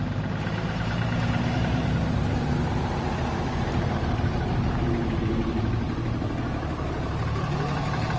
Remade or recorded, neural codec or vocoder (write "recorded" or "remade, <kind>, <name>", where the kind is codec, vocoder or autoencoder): remade, vocoder, BigVGAN v2